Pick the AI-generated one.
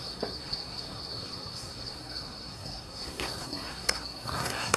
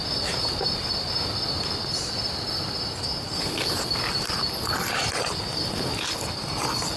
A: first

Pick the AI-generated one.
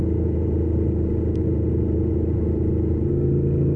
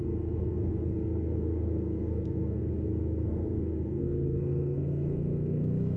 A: second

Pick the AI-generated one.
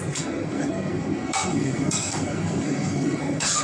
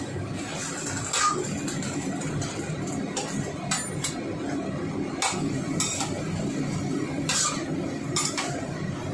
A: first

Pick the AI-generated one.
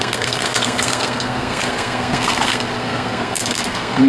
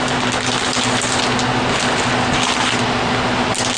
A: first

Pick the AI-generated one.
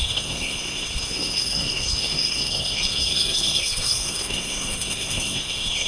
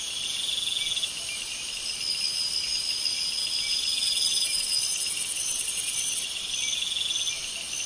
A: first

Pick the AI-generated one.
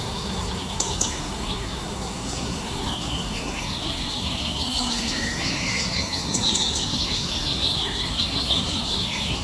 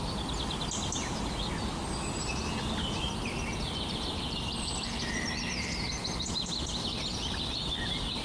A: first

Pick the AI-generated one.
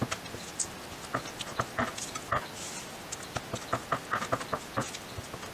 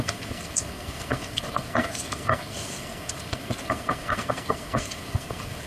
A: second